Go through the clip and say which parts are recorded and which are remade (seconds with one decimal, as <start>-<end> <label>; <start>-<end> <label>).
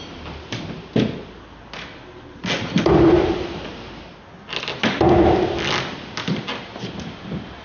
0.0-7.6 recorded